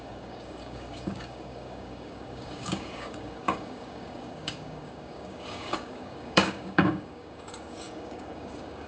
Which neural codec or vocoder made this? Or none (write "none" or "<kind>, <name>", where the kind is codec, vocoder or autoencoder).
codec, DAC